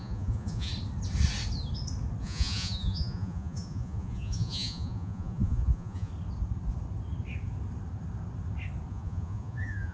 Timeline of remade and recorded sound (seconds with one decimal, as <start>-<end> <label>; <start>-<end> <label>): 0.0-0.7 remade; 0.7-2.2 recorded; 2.2-6.1 remade; 6.1-8.9 recorded; 8.9-9.9 remade